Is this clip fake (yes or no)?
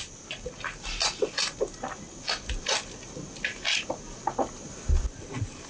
no